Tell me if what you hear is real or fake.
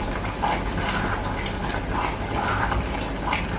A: real